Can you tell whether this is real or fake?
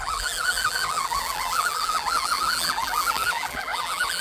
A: fake